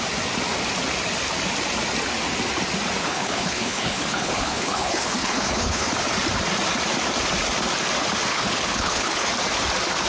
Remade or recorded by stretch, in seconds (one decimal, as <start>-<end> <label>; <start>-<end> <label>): 0.0-3.0 recorded; 3.0-5.9 remade; 5.9-8.3 recorded; 8.3-9.3 remade; 9.3-10.1 recorded